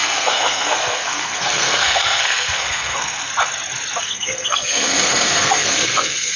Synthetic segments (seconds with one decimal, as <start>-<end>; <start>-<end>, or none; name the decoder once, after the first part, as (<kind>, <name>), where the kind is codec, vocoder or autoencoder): 0.0-3.3 (codec, SNAC); 4.0-6.4